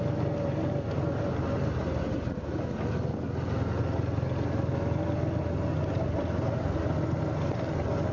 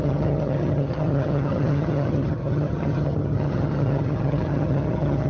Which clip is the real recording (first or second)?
first